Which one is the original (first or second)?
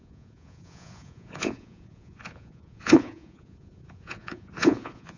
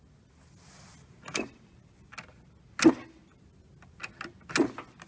second